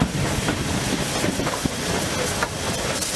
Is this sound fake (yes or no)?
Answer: no